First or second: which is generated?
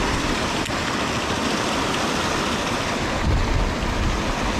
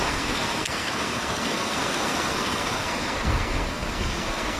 second